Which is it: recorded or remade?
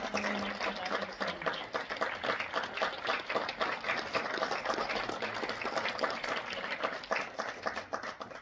recorded